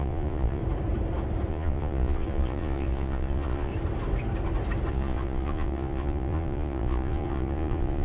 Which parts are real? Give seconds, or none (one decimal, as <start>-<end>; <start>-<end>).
0.6-1.5; 3.7-4.9